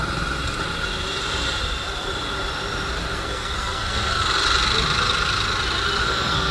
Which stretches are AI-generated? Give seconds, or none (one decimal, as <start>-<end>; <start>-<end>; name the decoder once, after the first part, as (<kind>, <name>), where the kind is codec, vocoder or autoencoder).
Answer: 3.0-4.2 (codec, SNAC); 6.0-6.5

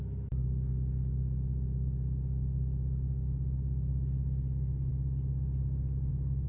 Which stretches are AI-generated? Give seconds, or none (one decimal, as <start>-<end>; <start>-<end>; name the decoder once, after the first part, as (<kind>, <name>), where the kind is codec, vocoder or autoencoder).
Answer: none

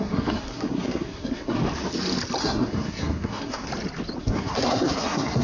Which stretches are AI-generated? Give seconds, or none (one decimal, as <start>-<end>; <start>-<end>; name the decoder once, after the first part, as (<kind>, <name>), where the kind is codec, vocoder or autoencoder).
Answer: 0.0-1.6 (codec, SNAC); 2.4-3.7; 4.2-5.4